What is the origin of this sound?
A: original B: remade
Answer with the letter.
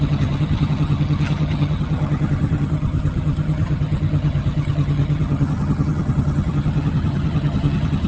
B